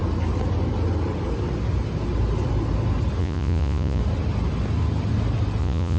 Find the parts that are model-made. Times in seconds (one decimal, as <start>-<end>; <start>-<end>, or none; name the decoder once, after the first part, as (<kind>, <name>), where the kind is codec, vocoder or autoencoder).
3.2-4.0 (vocoder, Vocos); 5.6-6.0